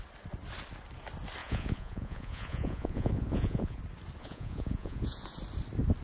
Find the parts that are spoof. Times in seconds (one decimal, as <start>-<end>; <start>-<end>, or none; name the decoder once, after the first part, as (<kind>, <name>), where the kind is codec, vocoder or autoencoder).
1.4-3.8 (vocoder, Vocos); 4.2-5.3